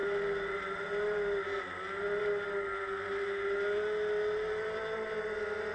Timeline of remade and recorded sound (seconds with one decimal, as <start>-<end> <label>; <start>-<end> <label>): 0.0-5.7 recorded

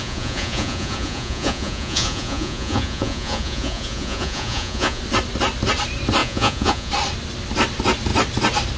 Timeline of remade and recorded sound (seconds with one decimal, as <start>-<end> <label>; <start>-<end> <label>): 0.0-5.0 remade; 5.0-6.2 recorded; 6.2-6.9 remade; 6.9-8.8 recorded

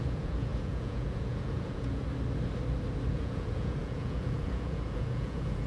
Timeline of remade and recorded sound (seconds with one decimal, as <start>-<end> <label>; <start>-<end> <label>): 0.0-2.0 remade; 2.0-3.1 recorded; 3.1-5.7 remade

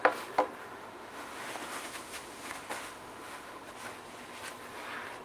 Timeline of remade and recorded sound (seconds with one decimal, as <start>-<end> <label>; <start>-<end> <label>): 0.0-0.6 recorded; 0.6-3.7 remade; 3.7-5.2 recorded

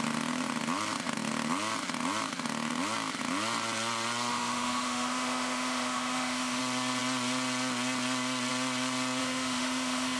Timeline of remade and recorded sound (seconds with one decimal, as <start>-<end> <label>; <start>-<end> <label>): 0.0-4.3 recorded; 4.3-6.6 remade; 6.6-9.2 recorded; 9.2-10.2 remade

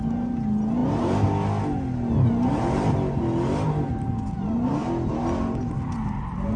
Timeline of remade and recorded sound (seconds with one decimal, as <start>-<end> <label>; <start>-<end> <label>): 0.0-6.6 recorded